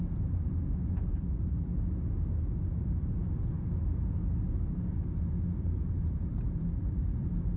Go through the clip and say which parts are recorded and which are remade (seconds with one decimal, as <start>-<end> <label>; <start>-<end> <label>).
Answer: 0.0-1.7 remade; 1.7-2.7 recorded; 2.7-7.6 remade